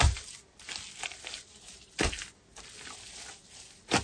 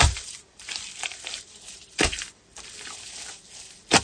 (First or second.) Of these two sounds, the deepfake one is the second